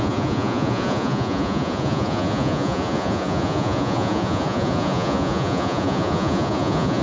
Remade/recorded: remade